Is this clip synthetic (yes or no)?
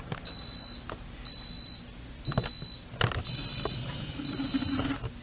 no